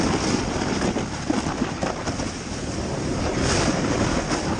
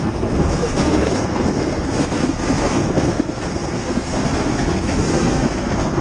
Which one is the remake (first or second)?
second